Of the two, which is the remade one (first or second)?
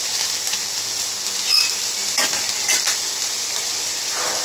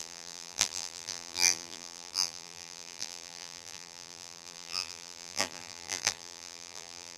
second